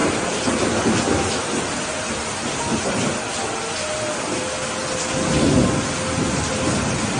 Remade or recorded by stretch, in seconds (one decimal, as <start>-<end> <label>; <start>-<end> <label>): 0.0-7.2 recorded